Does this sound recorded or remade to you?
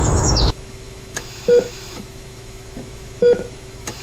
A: remade